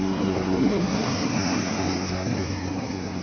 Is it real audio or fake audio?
fake